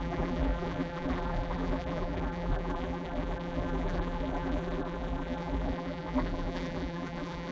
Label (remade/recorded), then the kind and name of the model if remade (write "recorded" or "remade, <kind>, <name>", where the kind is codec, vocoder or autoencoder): remade, vocoder, BigVGAN v2